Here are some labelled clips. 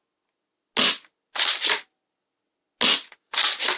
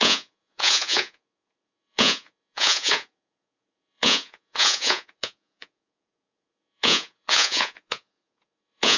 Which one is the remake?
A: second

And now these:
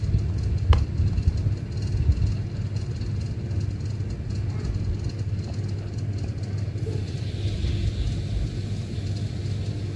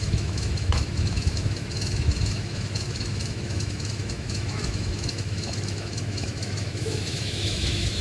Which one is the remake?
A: second